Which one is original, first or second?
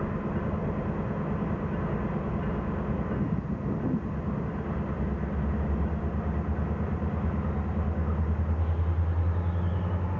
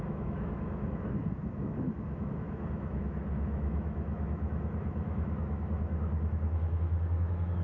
first